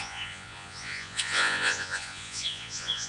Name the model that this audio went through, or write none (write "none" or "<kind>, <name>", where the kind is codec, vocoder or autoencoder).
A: vocoder, Vocos